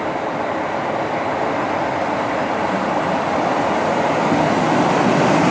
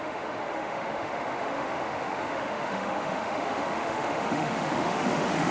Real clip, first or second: first